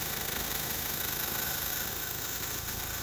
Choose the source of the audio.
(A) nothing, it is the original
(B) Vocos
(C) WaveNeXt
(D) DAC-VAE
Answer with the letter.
D